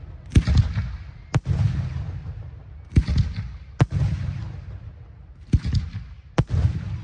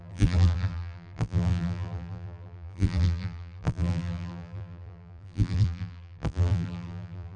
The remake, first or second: second